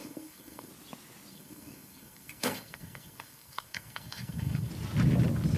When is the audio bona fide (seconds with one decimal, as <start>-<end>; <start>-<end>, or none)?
0.7-1.3; 4.7-5.6